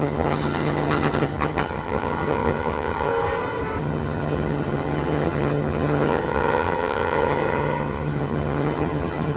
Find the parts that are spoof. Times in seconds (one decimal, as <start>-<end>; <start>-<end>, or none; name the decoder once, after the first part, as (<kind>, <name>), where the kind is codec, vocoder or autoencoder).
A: 0.0-3.1 (vocoder, HiFi-GAN); 3.8-9.4